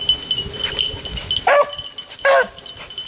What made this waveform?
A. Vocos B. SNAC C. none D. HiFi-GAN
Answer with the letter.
C